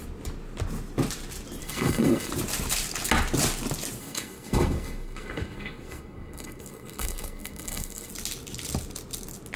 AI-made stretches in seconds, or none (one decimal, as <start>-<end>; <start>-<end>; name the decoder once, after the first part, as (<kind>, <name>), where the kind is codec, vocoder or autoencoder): 1.6-2.3 (codec, SNAC); 4.0-8.1